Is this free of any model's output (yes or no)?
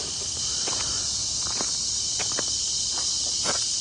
yes